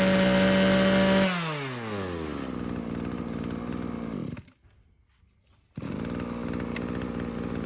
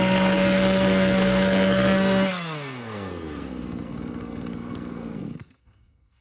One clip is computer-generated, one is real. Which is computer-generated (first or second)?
second